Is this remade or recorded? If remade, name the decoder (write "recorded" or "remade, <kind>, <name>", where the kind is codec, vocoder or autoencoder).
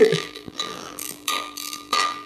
remade, vocoder, BigVGAN v2